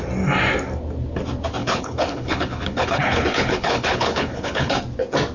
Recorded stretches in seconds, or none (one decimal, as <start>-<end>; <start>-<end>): 0.0-1.6; 4.8-5.3